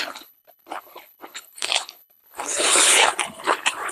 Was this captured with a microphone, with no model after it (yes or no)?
no